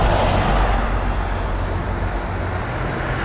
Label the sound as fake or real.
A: real